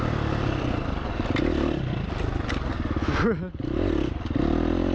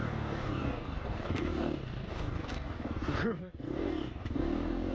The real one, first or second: first